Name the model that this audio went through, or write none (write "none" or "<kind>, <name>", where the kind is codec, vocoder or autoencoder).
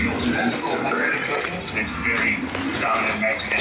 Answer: none